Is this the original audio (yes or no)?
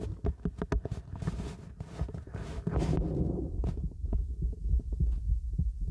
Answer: yes